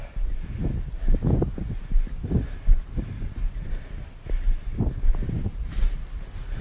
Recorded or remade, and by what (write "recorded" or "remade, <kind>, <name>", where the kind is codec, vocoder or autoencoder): recorded